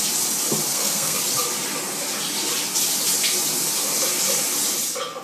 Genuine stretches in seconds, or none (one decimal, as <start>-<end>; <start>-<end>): 0.0-0.7; 1.2-5.2